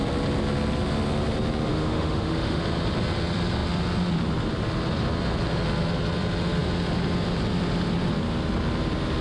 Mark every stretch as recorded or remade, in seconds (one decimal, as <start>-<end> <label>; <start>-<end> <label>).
0.0-1.7 recorded; 1.7-2.6 remade; 2.6-9.2 recorded